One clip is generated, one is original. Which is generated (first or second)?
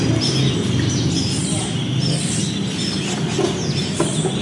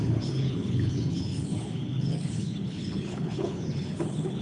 second